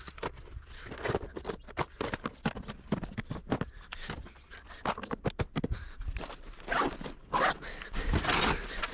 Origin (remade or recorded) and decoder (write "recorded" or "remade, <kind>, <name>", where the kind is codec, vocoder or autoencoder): recorded